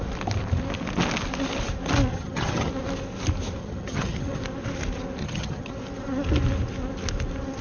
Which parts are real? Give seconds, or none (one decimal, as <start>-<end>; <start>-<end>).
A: 0.0-2.1; 2.7-3.6; 4.4-5.2; 5.7-7.6